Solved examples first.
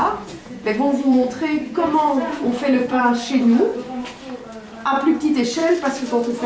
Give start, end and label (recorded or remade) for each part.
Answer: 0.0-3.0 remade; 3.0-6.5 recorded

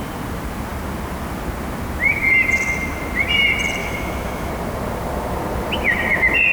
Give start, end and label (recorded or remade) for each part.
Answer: 0.0-3.8 recorded; 3.8-4.5 remade; 4.5-6.5 recorded

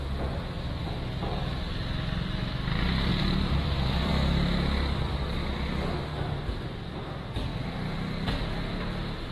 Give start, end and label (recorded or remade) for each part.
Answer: 0.0-3.1 recorded; 3.1-4.1 remade; 4.1-6.1 recorded; 6.1-7.0 remade; 7.0-9.3 recorded

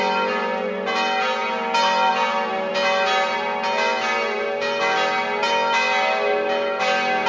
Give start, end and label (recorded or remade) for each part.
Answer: 0.0-7.3 recorded

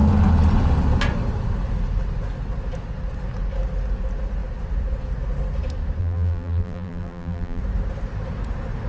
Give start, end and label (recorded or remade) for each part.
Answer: 0.0-6.0 recorded; 6.0-7.6 remade; 7.6-8.9 recorded

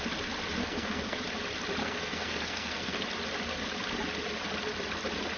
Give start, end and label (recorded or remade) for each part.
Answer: 0.0-0.6 recorded; 0.6-1.2 remade; 1.2-1.8 recorded; 1.8-3.0 remade; 3.0-5.4 recorded